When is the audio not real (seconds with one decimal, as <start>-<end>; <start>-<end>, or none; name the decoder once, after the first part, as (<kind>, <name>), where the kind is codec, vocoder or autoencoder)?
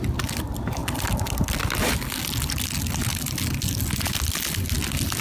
none